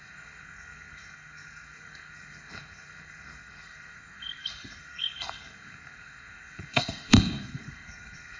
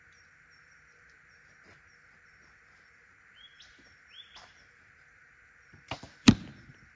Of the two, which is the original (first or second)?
second